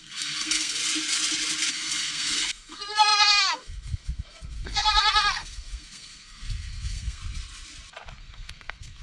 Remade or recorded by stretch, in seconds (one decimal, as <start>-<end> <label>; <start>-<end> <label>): 0.0-0.8 remade; 0.8-1.7 recorded; 1.7-7.2 remade; 7.2-8.2 recorded; 8.2-9.0 remade